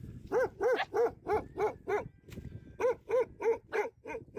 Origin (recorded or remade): recorded